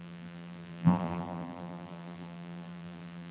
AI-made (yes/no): yes